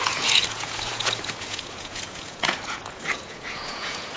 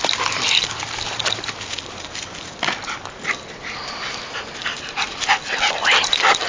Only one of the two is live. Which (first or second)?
second